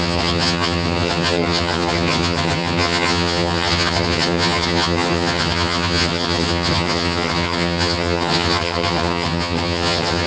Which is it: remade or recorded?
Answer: remade